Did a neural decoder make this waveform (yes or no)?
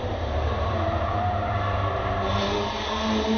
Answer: yes